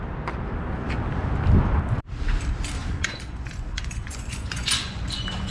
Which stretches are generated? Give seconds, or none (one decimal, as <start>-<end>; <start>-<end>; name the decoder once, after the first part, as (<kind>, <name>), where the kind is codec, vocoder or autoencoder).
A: 2.8-5.5 (vocoder, Vocos)